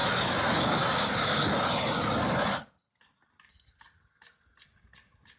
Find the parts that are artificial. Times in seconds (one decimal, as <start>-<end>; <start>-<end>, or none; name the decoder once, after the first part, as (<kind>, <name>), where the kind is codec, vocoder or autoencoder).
none